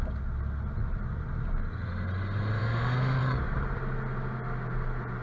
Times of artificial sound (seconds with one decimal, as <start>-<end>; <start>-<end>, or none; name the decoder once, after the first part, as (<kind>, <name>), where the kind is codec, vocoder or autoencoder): 2.6-3.2 (autoencoder, DAC-VAE)